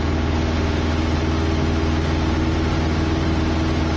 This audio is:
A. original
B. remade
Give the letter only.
A